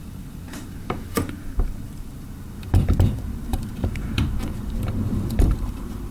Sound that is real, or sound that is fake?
fake